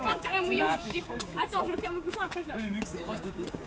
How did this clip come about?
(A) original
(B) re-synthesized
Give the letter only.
B